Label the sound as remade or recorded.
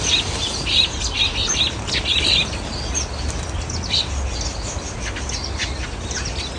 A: recorded